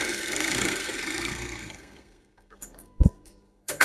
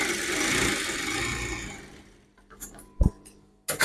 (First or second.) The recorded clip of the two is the second